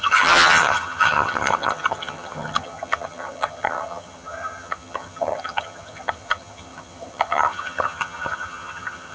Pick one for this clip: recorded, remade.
remade